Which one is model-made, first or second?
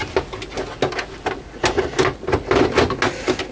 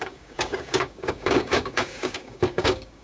second